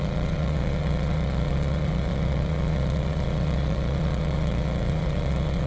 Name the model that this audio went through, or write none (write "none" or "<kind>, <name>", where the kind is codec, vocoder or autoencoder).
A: vocoder, Vocos